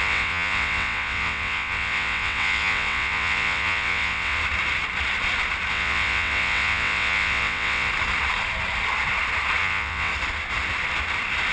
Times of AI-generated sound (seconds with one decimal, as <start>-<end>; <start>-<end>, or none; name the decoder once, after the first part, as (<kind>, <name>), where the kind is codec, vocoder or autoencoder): 0.0-4.4 (vocoder, WaveNeXt); 5.7-7.9; 9.6-10.1